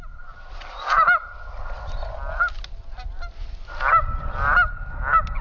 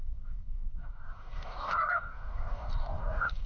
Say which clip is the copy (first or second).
second